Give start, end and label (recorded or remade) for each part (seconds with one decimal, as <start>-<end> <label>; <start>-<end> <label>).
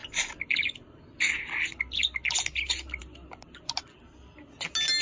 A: 0.0-5.0 recorded